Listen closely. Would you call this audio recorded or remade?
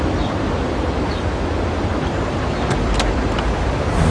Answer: recorded